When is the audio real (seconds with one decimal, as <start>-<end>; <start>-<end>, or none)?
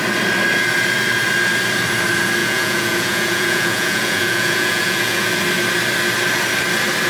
0.0-2.4; 5.4-7.1